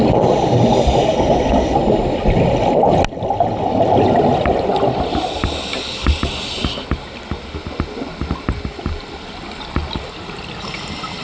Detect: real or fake real